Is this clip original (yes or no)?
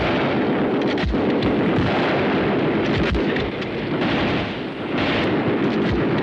yes